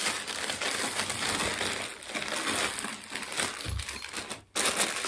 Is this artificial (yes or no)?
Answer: no